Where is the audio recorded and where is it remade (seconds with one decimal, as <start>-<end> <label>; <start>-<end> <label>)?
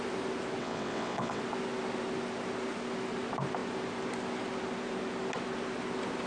0.0-0.6 recorded; 0.6-1.4 remade; 1.4-6.3 recorded